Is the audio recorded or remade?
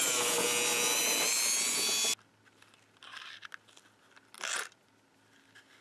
recorded